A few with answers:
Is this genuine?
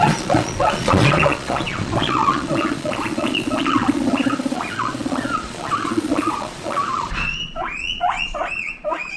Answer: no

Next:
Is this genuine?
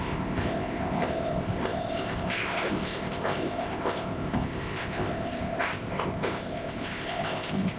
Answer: no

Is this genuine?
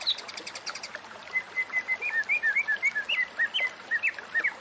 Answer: yes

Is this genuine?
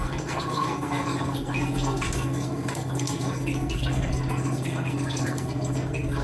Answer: no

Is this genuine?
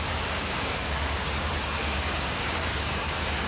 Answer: no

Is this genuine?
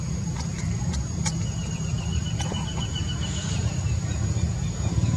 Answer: no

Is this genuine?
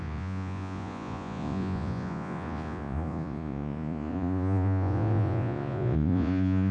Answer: no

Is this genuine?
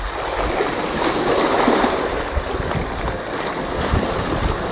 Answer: yes